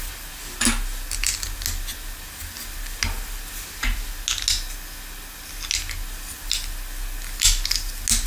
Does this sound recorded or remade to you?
recorded